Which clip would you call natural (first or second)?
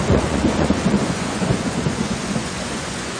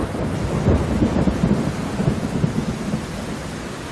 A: second